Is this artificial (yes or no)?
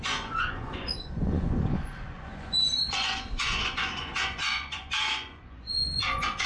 yes